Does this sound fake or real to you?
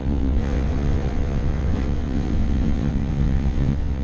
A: fake